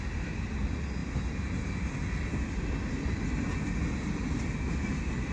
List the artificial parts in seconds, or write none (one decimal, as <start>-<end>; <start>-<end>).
none